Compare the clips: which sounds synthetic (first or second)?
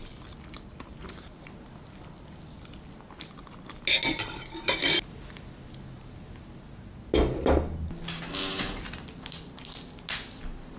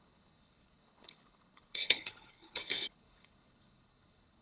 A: second